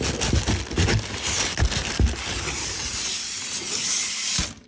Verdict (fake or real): real